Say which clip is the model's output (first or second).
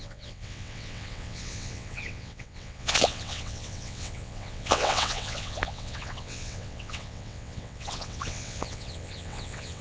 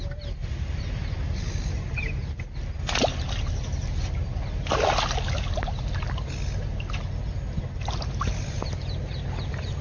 first